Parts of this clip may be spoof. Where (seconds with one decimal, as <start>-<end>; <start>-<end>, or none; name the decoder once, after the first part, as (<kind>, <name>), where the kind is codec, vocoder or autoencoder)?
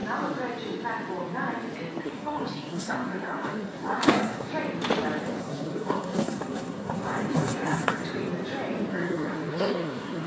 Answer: 2.0-4.5 (codec, SNAC); 5.4-8.0; 8.9-10.3